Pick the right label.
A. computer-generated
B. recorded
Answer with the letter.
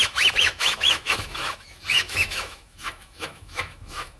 A